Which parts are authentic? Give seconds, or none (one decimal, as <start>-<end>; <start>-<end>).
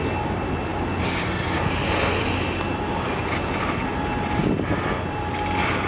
0.0-5.9